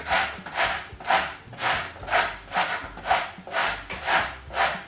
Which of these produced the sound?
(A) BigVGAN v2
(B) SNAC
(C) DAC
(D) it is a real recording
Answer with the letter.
D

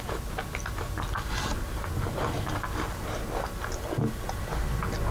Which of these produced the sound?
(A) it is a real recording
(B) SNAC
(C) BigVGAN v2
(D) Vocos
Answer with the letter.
A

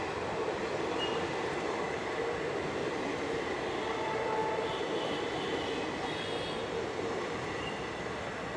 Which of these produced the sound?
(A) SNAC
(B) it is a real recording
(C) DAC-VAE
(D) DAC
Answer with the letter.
B